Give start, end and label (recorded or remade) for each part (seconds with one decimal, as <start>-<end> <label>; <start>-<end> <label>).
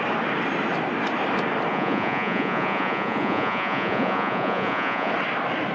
0.0-1.7 recorded; 1.7-5.1 remade; 5.1-5.7 recorded